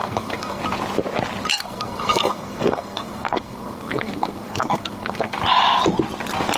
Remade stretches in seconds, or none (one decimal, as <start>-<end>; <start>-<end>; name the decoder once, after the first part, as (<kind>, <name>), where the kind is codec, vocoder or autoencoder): 0.0-0.6 (codec, SNAC); 1.5-5.4